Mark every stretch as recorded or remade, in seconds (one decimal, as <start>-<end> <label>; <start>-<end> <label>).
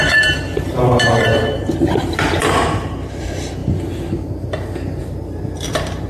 0.0-3.6 remade; 3.6-5.0 recorded; 5.0-6.1 remade